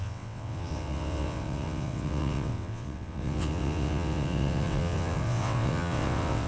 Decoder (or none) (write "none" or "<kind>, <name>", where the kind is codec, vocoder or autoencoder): vocoder, WaveNeXt